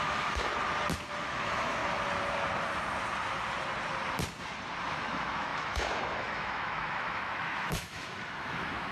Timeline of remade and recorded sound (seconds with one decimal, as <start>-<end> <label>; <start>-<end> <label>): 0.0-0.5 remade; 0.5-1.2 recorded; 1.2-1.8 remade; 1.8-4.8 recorded; 4.8-8.9 remade